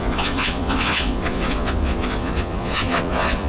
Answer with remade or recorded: remade